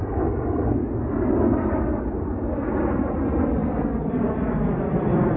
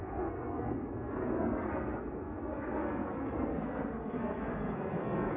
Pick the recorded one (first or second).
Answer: first